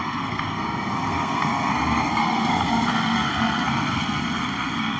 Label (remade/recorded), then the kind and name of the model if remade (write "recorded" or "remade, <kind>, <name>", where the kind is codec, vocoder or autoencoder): remade, codec, SNAC